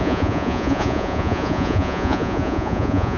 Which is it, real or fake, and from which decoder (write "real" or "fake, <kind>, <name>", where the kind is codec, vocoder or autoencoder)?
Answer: fake, vocoder, Vocos